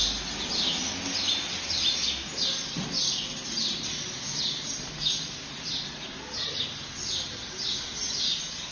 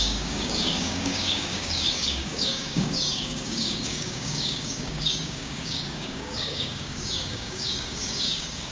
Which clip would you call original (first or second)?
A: first